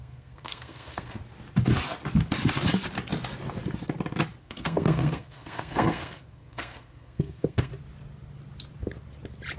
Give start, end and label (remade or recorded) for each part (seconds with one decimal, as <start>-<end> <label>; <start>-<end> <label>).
0.0-1.2 remade; 1.2-4.4 recorded; 4.4-7.7 remade; 7.7-9.6 recorded